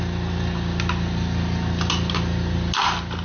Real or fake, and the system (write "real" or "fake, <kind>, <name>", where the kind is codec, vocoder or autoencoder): real